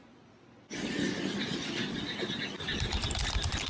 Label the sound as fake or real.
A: real